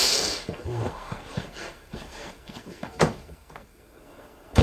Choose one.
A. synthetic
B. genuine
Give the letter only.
A